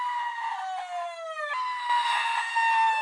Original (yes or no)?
yes